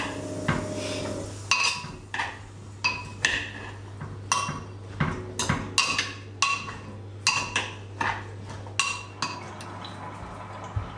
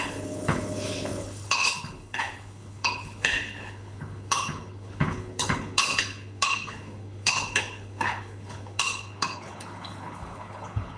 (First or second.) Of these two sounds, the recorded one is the first